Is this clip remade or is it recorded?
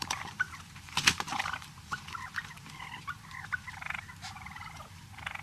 remade